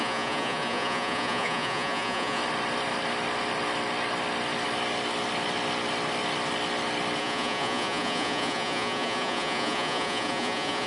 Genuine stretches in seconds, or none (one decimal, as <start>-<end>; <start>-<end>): 2.4-7.2